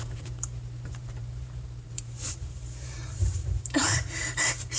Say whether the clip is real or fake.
fake